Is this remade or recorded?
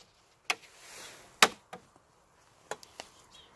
recorded